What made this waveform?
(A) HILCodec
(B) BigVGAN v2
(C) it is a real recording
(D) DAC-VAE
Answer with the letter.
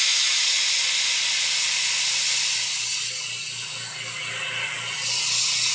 C